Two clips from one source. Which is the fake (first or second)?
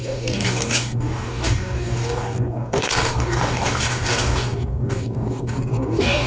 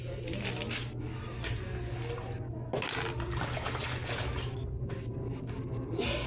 first